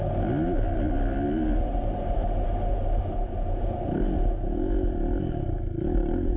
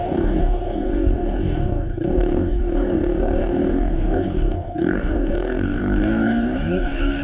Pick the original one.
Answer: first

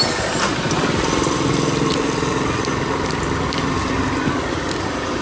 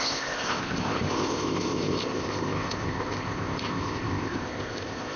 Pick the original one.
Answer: first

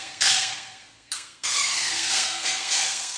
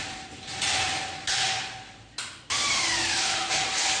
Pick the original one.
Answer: second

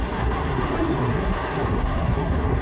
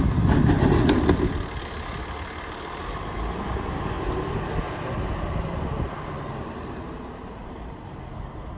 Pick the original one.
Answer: second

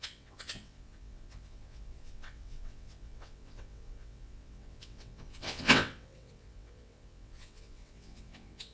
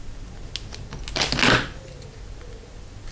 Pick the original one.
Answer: second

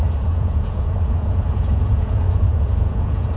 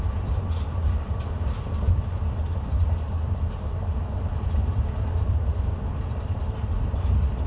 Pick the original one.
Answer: second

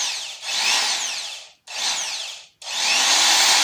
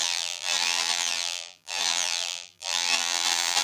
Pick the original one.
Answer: first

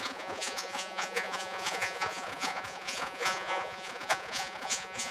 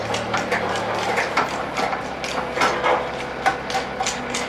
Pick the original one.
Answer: second